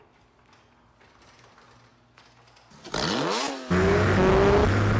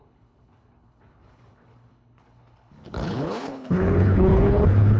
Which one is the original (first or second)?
first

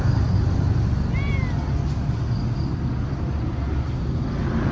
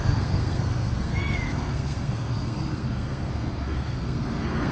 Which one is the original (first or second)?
first